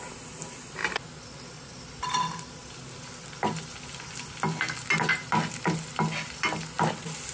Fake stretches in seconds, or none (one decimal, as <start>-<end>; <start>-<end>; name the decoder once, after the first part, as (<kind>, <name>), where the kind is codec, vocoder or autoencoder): none